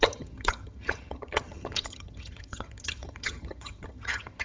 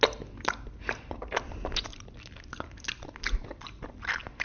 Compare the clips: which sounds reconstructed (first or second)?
first